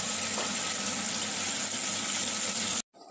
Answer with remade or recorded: recorded